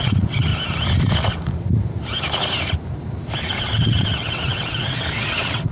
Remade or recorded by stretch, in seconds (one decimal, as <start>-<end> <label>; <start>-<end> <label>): 0.0-0.5 remade; 0.5-3.6 recorded; 3.6-5.7 remade